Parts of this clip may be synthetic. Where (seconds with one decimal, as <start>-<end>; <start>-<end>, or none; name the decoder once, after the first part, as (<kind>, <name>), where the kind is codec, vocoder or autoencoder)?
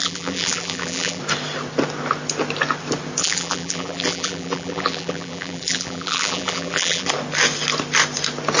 0.0-1.2 (vocoder, BigVGAN v2); 3.2-7.1